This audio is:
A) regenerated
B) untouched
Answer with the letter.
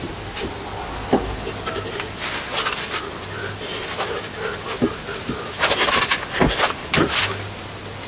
B